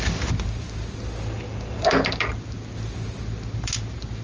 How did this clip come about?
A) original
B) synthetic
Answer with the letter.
A